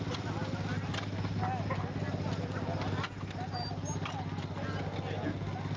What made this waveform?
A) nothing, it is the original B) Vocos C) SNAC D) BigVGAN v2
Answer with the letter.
A